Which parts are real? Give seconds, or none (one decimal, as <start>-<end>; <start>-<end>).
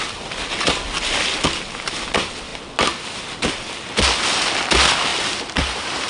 0.0-5.1